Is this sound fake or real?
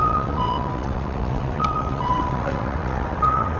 fake